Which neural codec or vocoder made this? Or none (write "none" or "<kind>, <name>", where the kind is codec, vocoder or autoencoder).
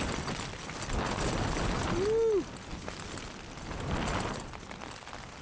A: none